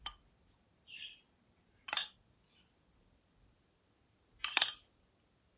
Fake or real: fake